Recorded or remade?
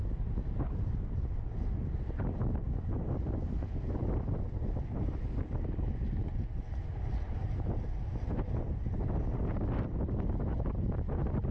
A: recorded